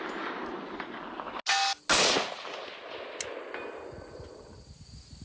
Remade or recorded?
recorded